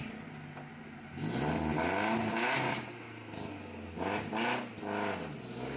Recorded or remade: recorded